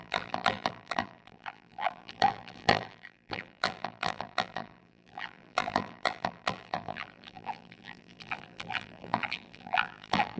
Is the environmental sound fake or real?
fake